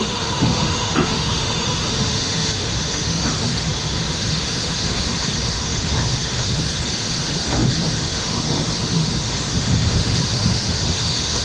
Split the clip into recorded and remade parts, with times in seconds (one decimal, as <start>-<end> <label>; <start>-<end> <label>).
0.0-11.4 remade

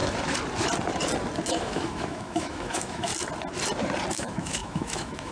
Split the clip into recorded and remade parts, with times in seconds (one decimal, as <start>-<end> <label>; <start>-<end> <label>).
0.0-1.5 recorded; 1.5-3.1 remade; 3.1-4.1 recorded; 4.1-5.3 remade

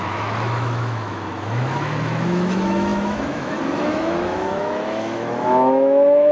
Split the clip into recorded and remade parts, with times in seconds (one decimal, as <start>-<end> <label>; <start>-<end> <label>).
0.0-6.3 remade